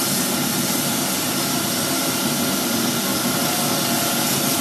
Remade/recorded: recorded